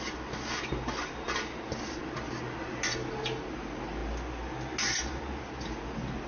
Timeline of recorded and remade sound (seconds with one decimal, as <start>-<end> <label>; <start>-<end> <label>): 0.0-2.0 remade; 2.0-3.5 recorded; 3.5-4.0 remade; 4.0-5.4 recorded; 5.4-6.3 remade